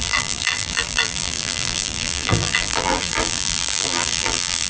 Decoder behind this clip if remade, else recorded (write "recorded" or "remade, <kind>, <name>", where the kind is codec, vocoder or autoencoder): remade, vocoder, BigVGAN v2